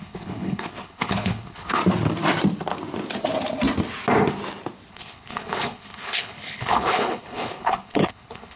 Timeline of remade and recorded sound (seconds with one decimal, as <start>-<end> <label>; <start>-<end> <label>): 0.0-1.8 remade; 1.8-4.9 recorded; 4.9-8.6 remade